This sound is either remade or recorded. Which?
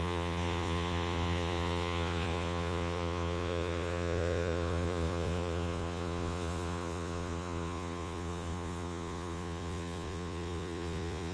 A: remade